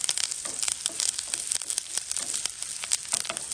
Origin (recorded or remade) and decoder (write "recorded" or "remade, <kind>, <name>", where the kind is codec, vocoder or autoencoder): recorded